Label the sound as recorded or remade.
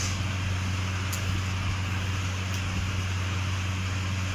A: recorded